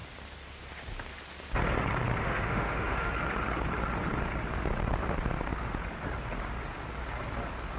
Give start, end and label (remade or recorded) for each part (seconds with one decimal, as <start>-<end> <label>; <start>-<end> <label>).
0.0-2.2 recorded; 2.2-3.1 remade; 3.1-7.8 recorded